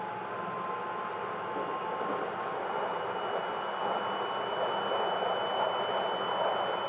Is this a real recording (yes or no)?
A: yes